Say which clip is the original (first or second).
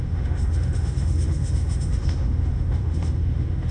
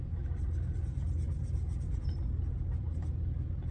second